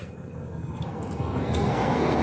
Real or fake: fake